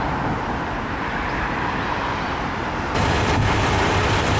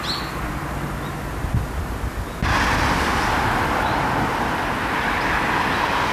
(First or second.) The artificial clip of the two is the first